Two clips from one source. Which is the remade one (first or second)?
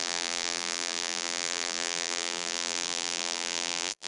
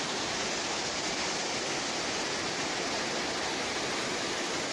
first